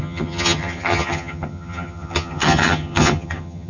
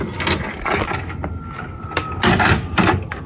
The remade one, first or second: first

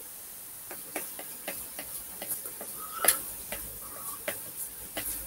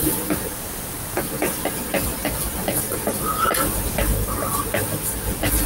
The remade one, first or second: first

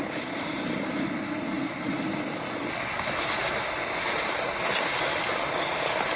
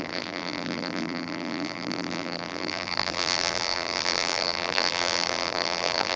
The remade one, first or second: second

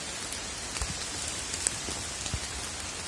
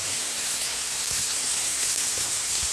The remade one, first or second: second